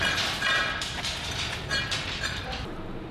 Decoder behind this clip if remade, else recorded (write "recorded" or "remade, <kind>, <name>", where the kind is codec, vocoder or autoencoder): recorded